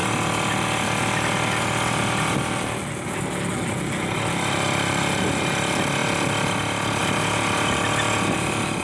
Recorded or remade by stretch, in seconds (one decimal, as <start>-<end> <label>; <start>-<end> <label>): 0.0-8.8 recorded